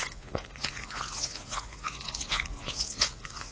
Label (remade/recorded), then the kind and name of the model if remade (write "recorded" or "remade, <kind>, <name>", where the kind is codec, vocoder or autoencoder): remade, vocoder, Vocos